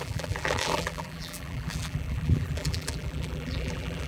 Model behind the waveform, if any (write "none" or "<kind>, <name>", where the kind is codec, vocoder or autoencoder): vocoder, BigVGAN v2